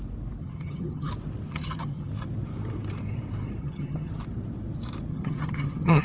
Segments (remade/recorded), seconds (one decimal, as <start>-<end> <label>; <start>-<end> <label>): 0.0-0.4 recorded; 0.4-1.1 remade; 1.1-1.5 recorded; 1.5-2.1 remade; 2.1-3.6 recorded; 3.6-4.1 remade; 4.1-5.1 recorded; 5.1-6.0 remade